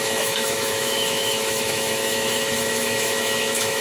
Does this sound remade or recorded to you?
remade